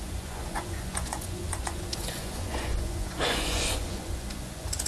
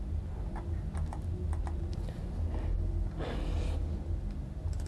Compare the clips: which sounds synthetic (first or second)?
first